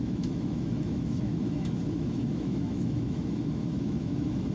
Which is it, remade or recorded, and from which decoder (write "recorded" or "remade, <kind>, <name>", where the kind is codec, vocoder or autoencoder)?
remade, autoencoder, DAC-VAE